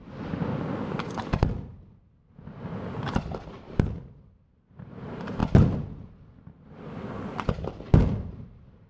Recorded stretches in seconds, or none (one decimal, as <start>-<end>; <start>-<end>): 0.0-8.9